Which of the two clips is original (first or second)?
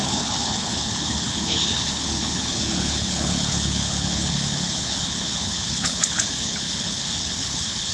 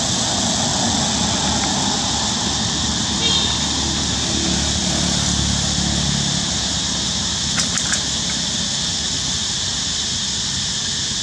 second